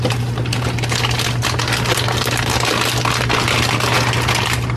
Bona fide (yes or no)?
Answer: yes